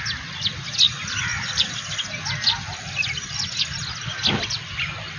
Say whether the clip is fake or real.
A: real